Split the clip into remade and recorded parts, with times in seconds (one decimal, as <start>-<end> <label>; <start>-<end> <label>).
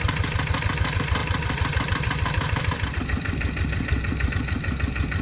0.0-1.2 recorded; 1.2-4.3 remade; 4.3-5.2 recorded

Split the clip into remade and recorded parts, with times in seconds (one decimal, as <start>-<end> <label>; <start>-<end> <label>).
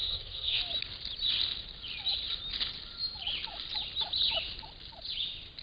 0.0-0.6 remade; 0.6-5.6 recorded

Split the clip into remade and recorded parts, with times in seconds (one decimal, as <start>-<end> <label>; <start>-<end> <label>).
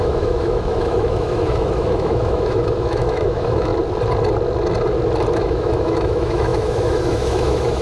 0.0-3.7 remade; 3.7-5.3 recorded; 5.3-7.8 remade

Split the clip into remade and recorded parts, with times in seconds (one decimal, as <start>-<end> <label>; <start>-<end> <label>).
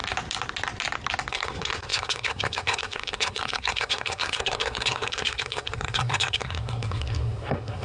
0.0-1.3 recorded; 1.3-7.8 remade